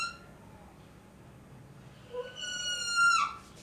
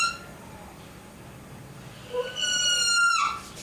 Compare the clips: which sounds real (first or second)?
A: first